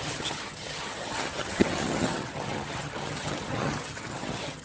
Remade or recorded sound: remade